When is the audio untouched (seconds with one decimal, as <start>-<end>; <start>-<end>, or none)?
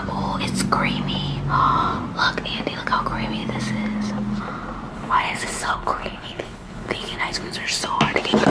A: 0.0-4.9; 7.8-8.5